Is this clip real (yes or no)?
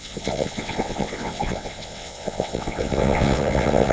no